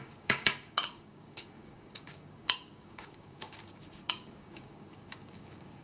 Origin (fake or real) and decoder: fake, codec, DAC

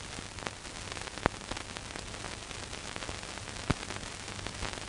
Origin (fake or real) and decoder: real